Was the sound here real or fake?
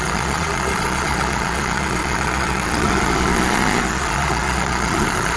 fake